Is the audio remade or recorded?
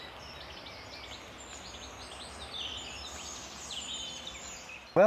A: recorded